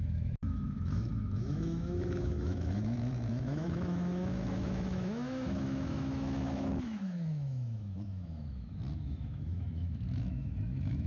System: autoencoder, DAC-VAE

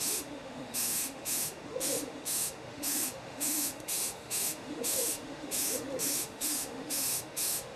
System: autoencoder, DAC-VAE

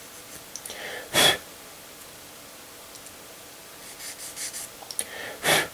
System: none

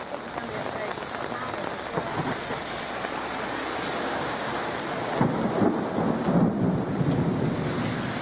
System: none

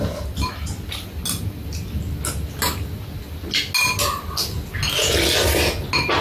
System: none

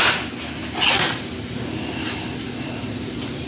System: none